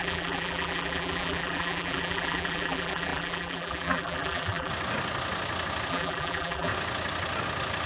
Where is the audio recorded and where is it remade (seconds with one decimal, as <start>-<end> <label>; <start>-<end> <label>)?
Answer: 0.0-4.7 remade; 4.7-5.9 recorded; 5.9-6.7 remade; 6.7-7.9 recorded